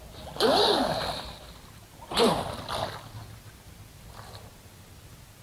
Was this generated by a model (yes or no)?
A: no